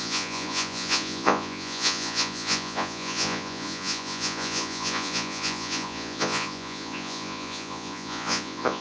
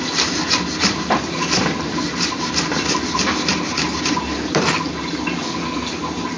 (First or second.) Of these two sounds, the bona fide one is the second